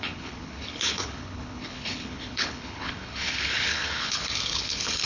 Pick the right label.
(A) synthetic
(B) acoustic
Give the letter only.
A